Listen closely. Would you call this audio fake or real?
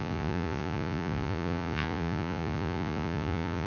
fake